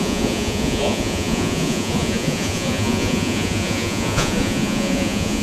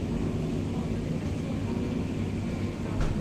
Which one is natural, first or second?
second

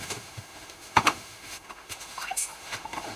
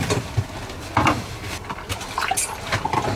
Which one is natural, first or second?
second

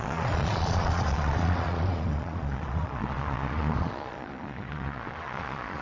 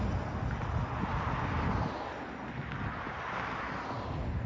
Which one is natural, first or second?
second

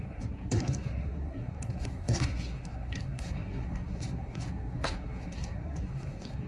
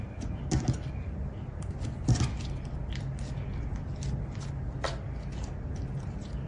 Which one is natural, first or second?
second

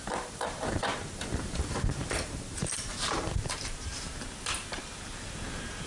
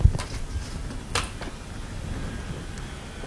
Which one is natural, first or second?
second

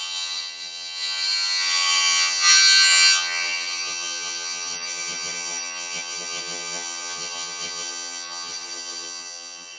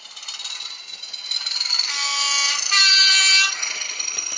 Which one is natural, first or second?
second